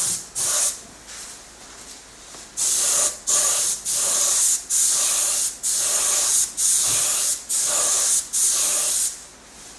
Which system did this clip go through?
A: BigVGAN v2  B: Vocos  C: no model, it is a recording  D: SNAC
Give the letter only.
C